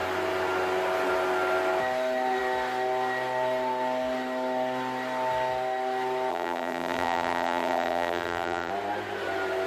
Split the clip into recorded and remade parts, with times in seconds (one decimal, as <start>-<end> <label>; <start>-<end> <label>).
0.0-6.3 recorded; 6.3-8.7 remade; 8.7-9.7 recorded